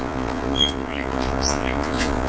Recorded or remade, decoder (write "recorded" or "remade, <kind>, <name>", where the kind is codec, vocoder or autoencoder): remade, vocoder, Vocos